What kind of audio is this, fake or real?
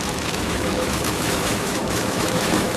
fake